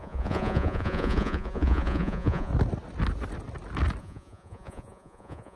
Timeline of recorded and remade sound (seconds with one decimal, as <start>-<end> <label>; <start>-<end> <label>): 0.0-2.5 remade; 2.5-4.0 recorded; 4.0-5.6 remade